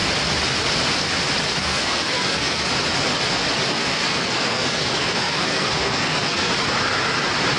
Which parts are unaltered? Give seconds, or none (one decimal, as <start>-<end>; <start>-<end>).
0.0-1.6; 2.7-3.7; 6.5-7.6